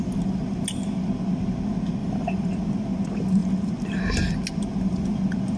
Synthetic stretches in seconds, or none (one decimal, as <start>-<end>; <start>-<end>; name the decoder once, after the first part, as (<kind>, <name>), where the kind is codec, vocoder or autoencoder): 2.0-2.5 (vocoder, BigVGAN v2)